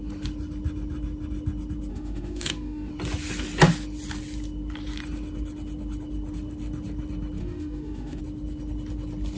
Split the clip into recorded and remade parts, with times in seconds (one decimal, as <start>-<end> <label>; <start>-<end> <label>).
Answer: 0.0-1.9 recorded; 1.9-2.9 remade; 2.9-7.4 recorded; 7.4-8.2 remade; 8.2-9.4 recorded